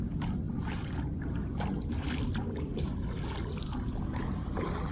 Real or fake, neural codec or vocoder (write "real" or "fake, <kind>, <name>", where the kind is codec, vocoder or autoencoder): real